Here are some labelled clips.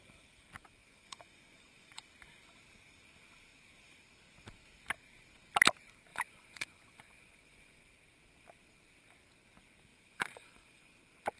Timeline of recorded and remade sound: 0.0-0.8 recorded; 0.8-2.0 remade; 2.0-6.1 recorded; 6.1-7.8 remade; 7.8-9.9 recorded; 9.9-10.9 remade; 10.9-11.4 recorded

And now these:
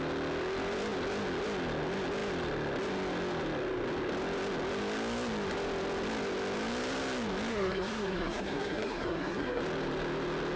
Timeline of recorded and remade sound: 0.0-7.5 recorded; 7.5-9.6 remade; 9.6-10.6 recorded

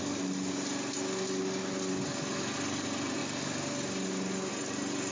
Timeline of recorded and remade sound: 0.0-5.1 recorded

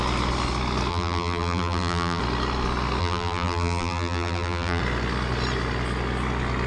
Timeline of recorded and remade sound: 0.0-0.9 recorded; 0.9-2.2 remade; 2.2-3.0 recorded; 3.0-4.8 remade; 4.8-6.7 recorded